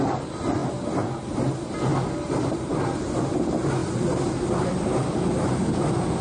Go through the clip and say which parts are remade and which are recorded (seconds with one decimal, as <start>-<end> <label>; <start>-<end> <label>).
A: 0.0-6.2 recorded